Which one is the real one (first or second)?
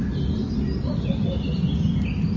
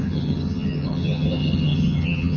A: first